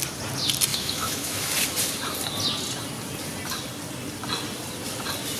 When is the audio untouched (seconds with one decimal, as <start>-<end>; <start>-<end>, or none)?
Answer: 0.0-0.7; 1.4-5.4